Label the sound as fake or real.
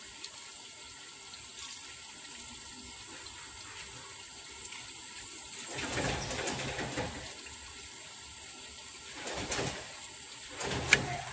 real